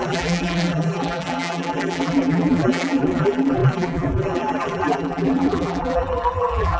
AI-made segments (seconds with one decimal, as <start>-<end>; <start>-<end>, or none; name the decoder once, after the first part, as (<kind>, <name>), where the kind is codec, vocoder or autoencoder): 0.0-6.8 (vocoder, BigVGAN v2)